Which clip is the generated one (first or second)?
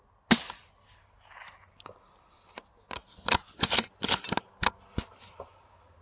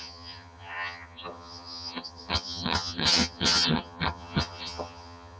second